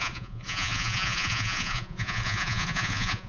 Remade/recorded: remade